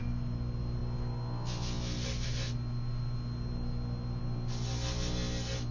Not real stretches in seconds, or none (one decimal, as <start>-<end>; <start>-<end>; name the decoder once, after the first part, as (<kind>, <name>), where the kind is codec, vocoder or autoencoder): none